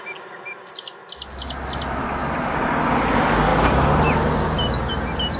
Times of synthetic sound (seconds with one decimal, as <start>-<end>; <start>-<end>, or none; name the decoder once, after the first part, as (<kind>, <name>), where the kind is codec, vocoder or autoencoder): none